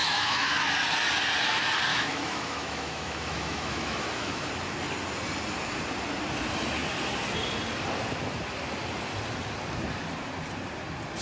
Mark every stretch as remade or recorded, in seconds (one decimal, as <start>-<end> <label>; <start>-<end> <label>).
0.0-0.5 remade; 0.5-1.9 recorded; 1.9-4.5 remade; 4.5-11.2 recorded